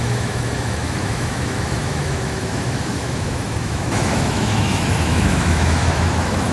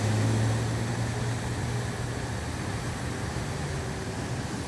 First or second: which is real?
second